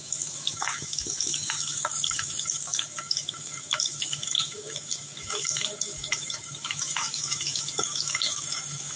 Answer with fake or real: fake